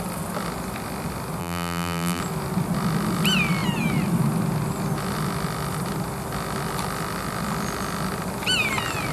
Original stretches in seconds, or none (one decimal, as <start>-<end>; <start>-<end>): 0.0-1.4; 2.2-9.1